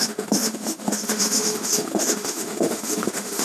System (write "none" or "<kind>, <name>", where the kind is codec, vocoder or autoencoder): autoencoder, DAC-VAE